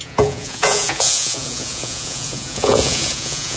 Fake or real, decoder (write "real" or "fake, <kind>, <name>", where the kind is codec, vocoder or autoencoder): fake, vocoder, Vocos